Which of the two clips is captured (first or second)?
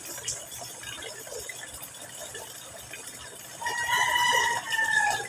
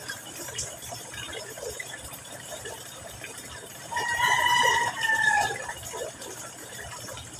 first